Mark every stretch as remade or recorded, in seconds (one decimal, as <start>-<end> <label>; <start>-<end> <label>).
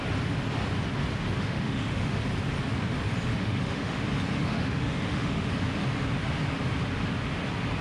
0.0-1.4 recorded; 1.4-2.2 remade; 2.2-3.4 recorded; 3.4-4.0 remade; 4.0-4.4 recorded; 4.4-5.5 remade; 5.5-7.8 recorded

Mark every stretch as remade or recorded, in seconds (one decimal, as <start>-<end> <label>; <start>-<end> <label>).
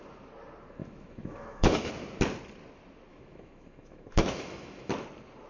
0.0-0.8 recorded; 0.8-1.9 remade; 1.9-3.1 recorded; 3.1-4.9 remade; 4.9-5.5 recorded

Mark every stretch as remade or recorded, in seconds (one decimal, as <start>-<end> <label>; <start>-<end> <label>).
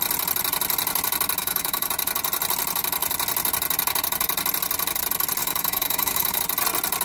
0.0-1.4 recorded; 1.4-1.9 remade; 1.9-5.4 recorded; 5.4-6.4 remade; 6.4-7.0 recorded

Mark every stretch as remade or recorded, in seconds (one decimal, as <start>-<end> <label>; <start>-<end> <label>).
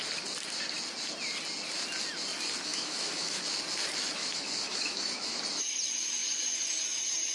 0.0-2.7 recorded; 2.7-3.4 remade; 3.4-4.2 recorded; 4.2-5.4 remade; 5.4-7.3 recorded